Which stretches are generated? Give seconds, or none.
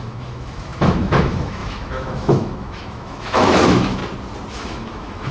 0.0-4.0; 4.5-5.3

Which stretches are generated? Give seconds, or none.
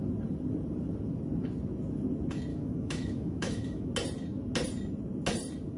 2.5-3.9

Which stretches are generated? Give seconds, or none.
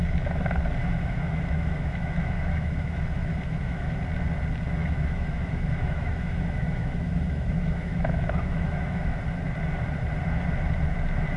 0.8-4.0; 4.8-9.2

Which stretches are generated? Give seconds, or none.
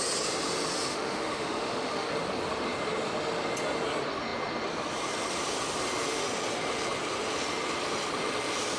0.9-2.1